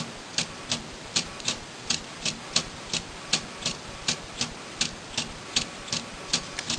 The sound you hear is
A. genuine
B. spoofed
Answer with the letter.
B